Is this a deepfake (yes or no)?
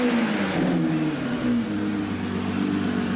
no